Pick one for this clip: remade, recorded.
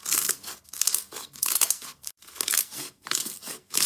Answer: remade